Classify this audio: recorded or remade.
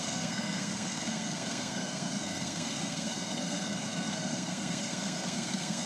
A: remade